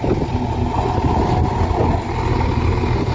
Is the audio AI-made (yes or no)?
no